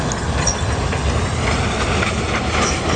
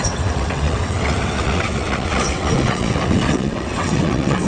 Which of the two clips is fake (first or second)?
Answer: second